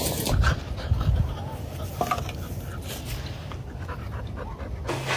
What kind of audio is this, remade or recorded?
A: recorded